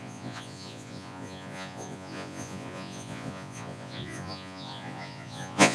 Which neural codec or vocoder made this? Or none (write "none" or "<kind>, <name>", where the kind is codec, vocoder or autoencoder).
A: vocoder, Vocos